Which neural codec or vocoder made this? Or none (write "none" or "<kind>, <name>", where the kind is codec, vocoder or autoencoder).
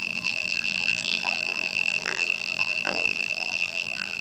vocoder, BigVGAN v2